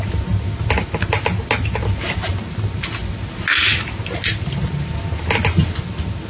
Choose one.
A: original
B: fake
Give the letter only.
A